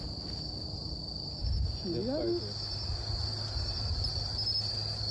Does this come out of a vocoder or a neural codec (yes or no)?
no